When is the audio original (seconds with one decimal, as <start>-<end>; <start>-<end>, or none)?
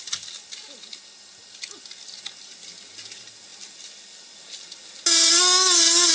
0.0-6.1